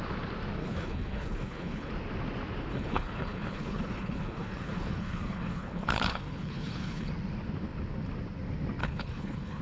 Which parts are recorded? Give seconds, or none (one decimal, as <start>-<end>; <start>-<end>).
0.0-0.6; 1.9-2.7; 7.1-8.8